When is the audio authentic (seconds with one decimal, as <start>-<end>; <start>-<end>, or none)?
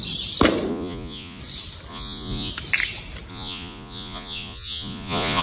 0.0-0.7; 1.4-1.9; 2.5-3.3